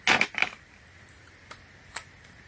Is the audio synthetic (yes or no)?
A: no